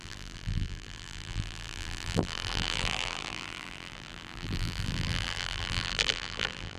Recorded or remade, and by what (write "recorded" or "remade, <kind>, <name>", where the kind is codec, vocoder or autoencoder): remade, vocoder, BigVGAN v2